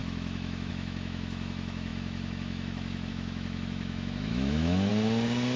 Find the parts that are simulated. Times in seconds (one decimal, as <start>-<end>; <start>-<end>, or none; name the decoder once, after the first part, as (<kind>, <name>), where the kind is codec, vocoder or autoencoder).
0.0-4.9 (autoencoder, DAC-VAE)